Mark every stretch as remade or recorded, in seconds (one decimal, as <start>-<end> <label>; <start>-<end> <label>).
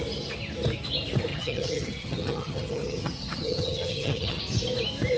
0.0-1.3 recorded; 1.3-4.4 remade; 4.4-5.2 recorded